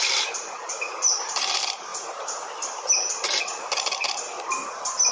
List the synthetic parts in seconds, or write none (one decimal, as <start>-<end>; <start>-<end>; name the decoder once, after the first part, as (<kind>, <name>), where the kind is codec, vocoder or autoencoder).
none